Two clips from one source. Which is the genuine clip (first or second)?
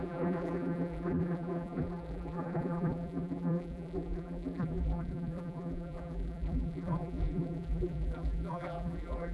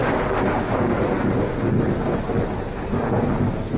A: second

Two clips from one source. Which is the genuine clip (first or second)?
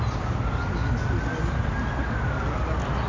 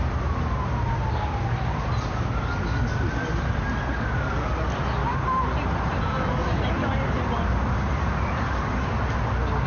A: first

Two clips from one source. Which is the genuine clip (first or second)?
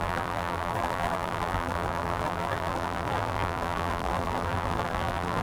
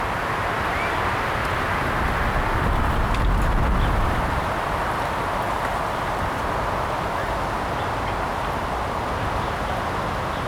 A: second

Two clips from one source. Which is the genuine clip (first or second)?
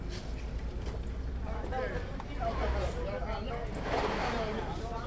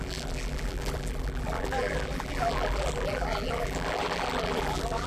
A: first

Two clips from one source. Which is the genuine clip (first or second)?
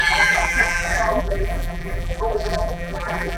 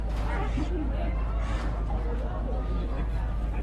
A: second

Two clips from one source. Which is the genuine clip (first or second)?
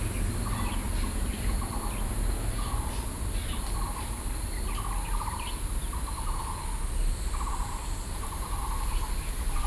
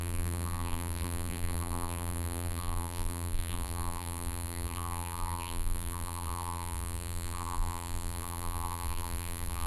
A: first